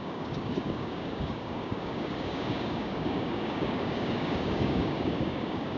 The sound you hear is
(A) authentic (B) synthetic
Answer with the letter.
B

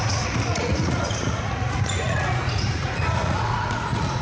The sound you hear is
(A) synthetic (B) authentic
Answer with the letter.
A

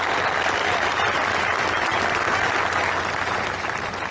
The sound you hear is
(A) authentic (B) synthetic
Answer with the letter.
A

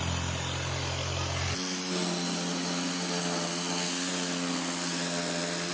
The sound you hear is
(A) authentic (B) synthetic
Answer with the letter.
A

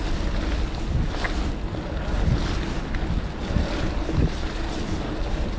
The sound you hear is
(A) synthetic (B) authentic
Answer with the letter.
B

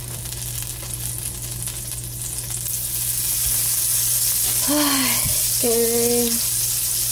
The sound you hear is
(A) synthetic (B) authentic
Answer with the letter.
B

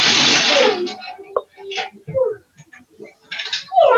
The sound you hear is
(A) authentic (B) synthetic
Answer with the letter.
A